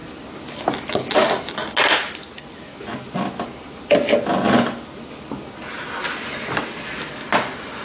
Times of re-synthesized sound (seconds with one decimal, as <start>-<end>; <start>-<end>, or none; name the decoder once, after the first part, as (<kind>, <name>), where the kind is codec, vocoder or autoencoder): none